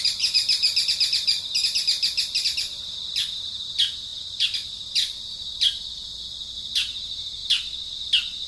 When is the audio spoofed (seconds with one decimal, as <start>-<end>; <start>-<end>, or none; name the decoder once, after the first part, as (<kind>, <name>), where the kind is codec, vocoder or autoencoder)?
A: none